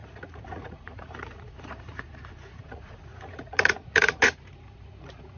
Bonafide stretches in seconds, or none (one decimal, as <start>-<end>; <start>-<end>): none